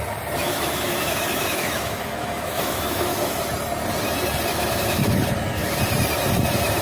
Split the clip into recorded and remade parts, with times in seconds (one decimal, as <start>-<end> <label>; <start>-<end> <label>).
0.0-0.4 recorded; 0.4-3.5 remade; 3.5-4.5 recorded; 4.5-5.1 remade; 5.1-6.8 recorded